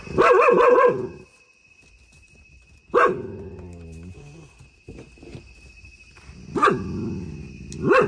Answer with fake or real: real